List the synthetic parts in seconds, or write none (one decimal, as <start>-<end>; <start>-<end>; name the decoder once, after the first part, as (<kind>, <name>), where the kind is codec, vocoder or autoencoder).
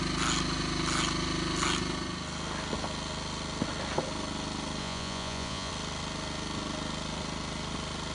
4.8-5.7 (vocoder, Vocos)